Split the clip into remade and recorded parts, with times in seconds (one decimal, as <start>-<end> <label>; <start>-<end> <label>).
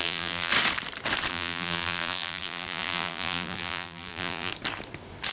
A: 0.0-0.5 remade; 0.5-1.3 recorded; 1.3-4.5 remade; 4.5-5.3 recorded